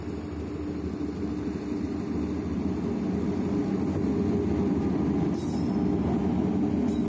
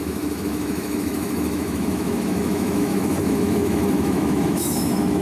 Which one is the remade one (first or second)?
second